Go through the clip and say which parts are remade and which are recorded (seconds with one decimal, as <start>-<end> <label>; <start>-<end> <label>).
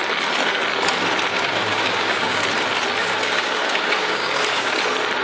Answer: 0.0-1.3 recorded; 1.3-2.4 remade; 2.4-3.0 recorded; 3.0-4.8 remade; 4.8-5.2 recorded